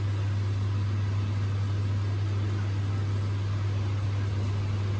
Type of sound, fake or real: real